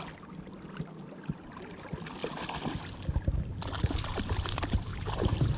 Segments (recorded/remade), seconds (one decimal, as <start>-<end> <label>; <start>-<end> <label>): 0.0-4.9 recorded; 4.9-5.6 remade